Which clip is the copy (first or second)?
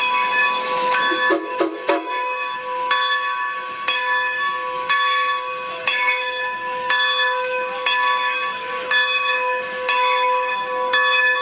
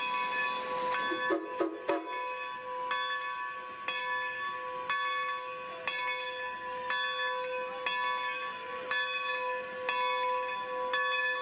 first